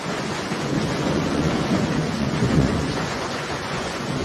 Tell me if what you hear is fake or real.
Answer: fake